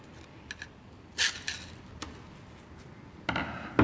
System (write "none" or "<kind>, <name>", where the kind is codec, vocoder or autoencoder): none